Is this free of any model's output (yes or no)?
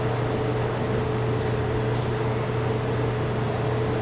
yes